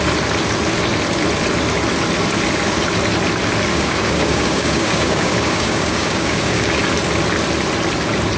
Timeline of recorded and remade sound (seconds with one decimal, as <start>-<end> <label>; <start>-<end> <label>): 0.0-3.7 recorded; 3.7-6.8 remade; 6.8-8.4 recorded